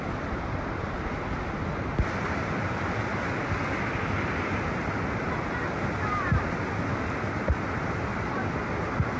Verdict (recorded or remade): recorded